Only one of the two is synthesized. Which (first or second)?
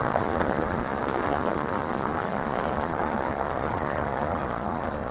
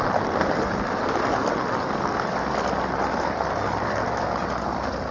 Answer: first